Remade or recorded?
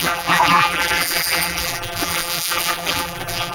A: remade